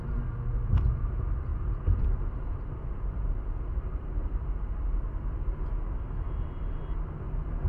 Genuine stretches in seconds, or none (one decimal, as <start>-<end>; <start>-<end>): 0.0-1.5; 4.6-7.7